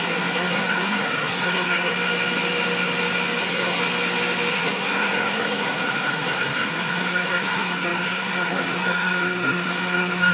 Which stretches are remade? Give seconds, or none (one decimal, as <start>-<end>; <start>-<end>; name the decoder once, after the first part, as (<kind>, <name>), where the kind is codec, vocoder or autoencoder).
0.0-1.9 (codec, SNAC); 3.4-3.8; 4.5-10.3